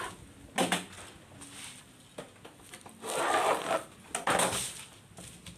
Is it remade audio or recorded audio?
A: recorded